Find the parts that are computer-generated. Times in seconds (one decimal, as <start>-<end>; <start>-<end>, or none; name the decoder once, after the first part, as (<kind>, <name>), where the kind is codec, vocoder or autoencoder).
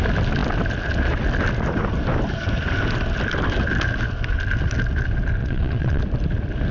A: 5.4-6.0 (vocoder, WaveNeXt)